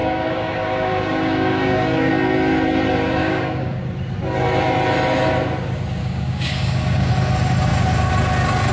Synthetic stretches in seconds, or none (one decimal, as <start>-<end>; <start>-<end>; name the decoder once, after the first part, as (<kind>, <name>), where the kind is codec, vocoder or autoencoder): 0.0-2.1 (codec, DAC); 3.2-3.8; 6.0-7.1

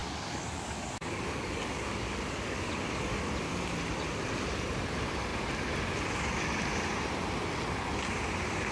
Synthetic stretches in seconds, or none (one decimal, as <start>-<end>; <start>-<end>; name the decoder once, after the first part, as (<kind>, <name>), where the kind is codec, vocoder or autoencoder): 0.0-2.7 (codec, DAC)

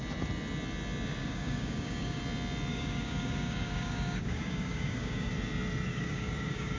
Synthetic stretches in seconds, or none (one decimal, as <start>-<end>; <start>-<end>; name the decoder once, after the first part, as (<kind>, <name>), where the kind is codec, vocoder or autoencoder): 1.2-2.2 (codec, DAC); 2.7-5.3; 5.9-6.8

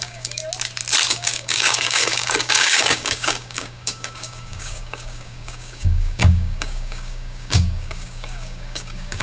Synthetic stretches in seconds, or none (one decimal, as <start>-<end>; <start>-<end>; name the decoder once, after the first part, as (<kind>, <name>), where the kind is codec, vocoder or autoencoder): 0.0-0.4 (codec, DAC); 1.1-9.2

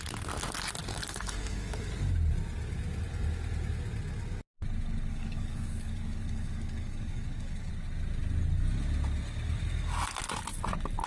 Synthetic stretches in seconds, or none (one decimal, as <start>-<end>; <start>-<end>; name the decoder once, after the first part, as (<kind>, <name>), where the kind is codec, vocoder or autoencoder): 0.9-1.9 (codec, DAC); 5.1-7.7